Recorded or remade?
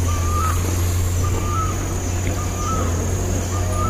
recorded